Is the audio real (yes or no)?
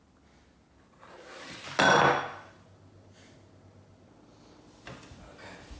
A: yes